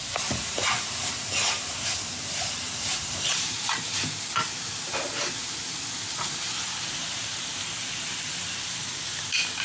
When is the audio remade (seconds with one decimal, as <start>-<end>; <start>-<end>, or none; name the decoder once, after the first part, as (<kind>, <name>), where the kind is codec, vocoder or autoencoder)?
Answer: 0.4-2.1 (vocoder, BigVGAN v2); 2.9-4.0